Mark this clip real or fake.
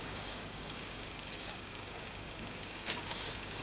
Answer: fake